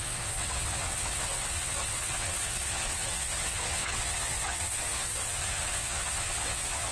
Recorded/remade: remade